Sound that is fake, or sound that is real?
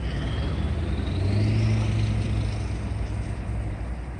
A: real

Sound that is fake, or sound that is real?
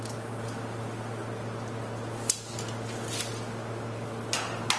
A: real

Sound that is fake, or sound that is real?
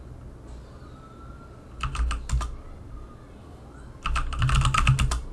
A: real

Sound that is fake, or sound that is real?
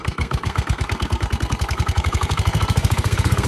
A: fake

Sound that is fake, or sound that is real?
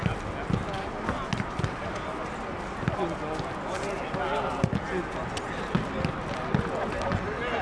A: real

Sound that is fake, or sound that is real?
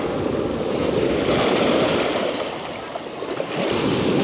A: real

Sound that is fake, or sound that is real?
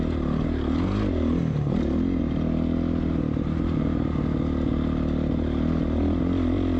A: real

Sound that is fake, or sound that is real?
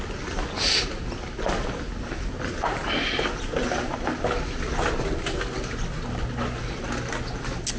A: real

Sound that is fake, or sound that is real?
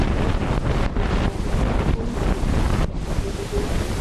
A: real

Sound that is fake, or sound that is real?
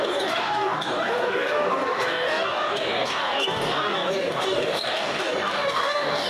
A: fake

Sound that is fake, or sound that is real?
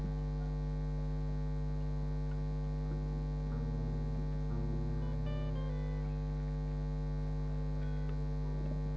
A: real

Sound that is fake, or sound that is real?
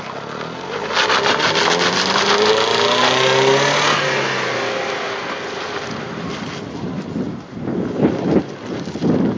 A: real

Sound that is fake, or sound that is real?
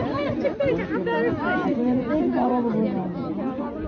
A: real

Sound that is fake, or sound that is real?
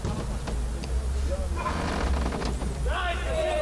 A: real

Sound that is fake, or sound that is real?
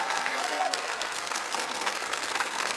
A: fake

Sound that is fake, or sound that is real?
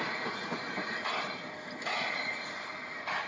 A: real